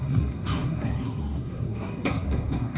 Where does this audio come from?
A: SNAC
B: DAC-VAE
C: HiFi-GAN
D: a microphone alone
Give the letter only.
A